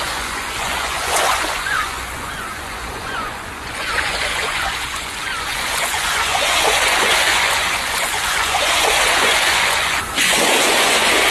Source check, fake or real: fake